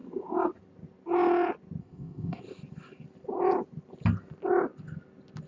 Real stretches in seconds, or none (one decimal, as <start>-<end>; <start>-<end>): 0.0-1.8; 2.4-5.5